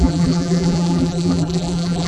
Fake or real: fake